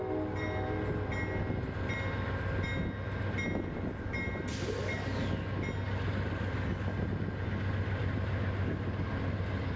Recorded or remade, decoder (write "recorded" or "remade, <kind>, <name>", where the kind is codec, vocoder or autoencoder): recorded